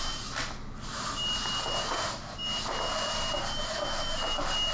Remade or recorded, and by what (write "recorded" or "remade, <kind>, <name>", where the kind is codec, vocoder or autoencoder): recorded